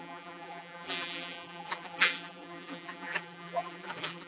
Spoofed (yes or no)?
yes